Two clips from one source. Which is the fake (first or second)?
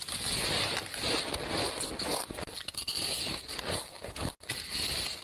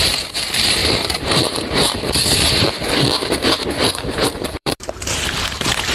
second